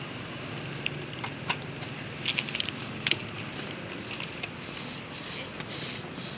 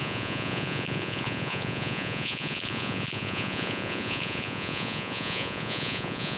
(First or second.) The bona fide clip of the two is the first